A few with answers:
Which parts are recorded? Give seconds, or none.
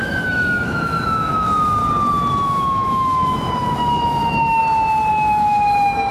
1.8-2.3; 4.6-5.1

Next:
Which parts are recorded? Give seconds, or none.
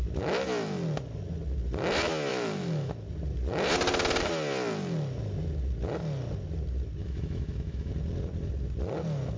0.0-2.3; 2.9-7.0; 7.9-9.4